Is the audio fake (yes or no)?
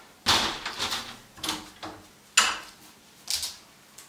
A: no